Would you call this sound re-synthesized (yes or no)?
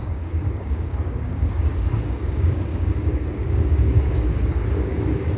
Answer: yes